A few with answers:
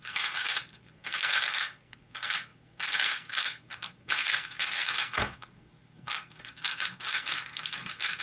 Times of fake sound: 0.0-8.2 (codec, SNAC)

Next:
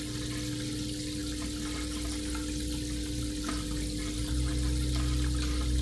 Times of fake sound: none

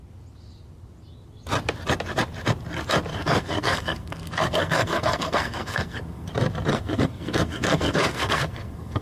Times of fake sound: 3.1-6.3 (codec, SNAC); 6.7-9.0